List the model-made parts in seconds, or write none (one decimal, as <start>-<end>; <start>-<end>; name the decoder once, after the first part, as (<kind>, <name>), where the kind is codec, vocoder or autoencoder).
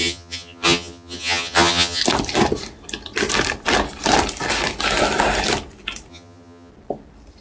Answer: 0.0-2.0 (vocoder, HiFi-GAN); 6.1-6.7